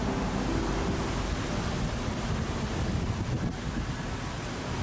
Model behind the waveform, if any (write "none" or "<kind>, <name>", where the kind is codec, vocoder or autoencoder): none